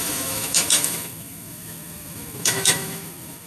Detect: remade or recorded remade